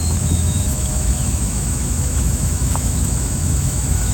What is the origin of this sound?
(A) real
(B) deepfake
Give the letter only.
B